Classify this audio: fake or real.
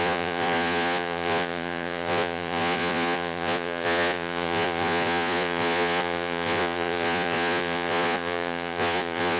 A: fake